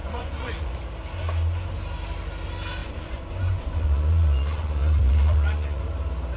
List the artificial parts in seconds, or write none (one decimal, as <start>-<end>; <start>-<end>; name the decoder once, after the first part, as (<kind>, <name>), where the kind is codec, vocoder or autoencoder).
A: 0.0-0.8 (vocoder, Vocos); 2.8-5.8